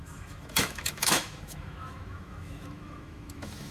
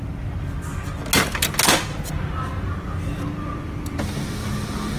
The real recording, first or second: second